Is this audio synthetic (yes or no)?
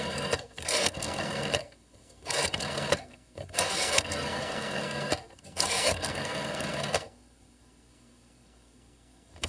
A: yes